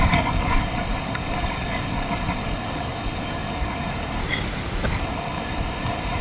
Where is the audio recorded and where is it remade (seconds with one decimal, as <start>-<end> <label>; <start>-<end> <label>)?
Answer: 0.0-4.2 remade; 4.2-5.0 recorded; 5.0-6.2 remade